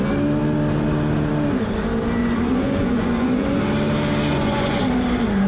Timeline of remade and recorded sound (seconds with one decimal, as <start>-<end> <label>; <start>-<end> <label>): 0.0-2.2 recorded; 2.2-3.6 remade; 3.6-4.3 recorded; 4.3-4.8 remade; 4.8-5.5 recorded